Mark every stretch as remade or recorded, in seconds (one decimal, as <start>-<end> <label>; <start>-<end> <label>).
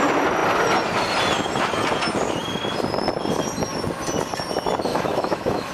0.0-4.9 recorded; 4.9-5.7 remade